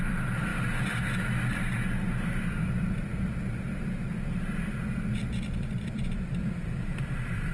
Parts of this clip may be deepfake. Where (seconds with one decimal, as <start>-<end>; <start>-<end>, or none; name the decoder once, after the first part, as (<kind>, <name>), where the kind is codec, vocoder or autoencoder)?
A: 0.0-0.5 (vocoder, BigVGAN v2); 2.5-3.1; 5.0-7.5